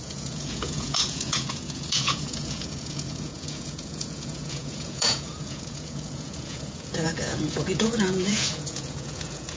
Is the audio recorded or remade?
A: remade